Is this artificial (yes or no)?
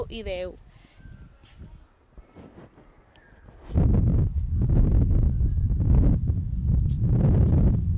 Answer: no